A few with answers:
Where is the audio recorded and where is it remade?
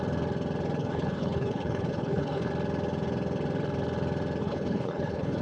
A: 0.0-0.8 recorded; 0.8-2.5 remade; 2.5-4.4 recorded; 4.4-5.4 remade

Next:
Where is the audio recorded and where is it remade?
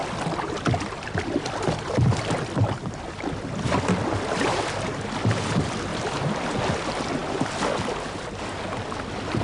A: 0.0-9.4 recorded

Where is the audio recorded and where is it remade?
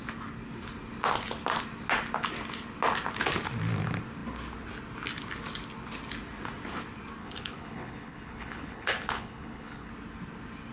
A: 0.0-7.2 recorded; 7.2-9.9 remade; 9.9-10.7 recorded